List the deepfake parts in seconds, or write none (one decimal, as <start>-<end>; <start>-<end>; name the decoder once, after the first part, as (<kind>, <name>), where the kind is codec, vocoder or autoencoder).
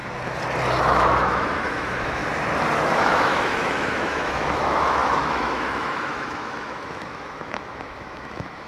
0.8-2.2 (autoencoder, DAC-VAE); 2.8-8.7